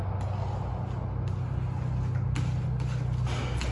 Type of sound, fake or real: real